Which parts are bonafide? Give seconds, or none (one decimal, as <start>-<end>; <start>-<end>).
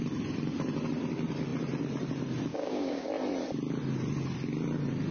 0.0-2.5; 3.1-5.1